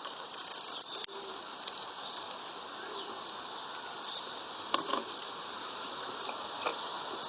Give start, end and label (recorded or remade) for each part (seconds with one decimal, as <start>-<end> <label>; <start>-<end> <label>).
0.0-0.5 remade; 0.5-4.9 recorded; 4.9-6.7 remade; 6.7-7.3 recorded